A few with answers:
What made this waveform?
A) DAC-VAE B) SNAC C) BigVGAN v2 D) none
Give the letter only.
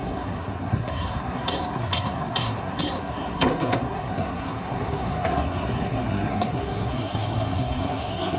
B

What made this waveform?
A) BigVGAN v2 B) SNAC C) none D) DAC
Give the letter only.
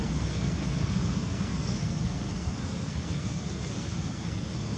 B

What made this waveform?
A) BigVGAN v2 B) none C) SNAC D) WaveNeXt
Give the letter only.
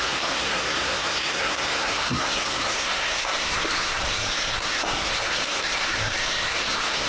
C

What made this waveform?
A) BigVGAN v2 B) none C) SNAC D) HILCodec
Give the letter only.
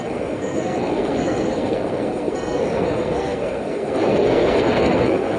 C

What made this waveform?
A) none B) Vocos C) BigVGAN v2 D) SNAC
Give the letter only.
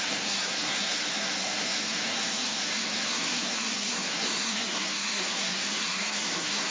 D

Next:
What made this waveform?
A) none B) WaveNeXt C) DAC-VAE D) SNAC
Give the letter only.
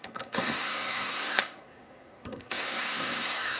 D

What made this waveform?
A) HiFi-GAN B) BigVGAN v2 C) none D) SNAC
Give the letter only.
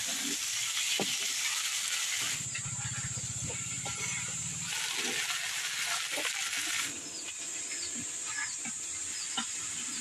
C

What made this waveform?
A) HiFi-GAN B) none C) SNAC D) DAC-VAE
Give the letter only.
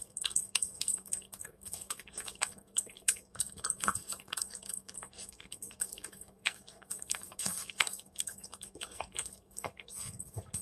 C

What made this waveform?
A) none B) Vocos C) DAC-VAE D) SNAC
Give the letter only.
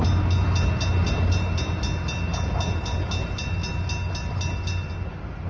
A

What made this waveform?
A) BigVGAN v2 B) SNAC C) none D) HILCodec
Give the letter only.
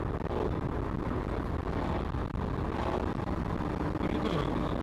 C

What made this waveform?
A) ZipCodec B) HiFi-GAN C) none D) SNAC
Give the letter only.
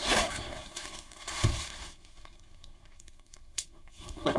D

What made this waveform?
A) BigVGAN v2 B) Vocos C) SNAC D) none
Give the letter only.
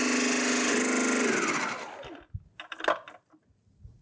D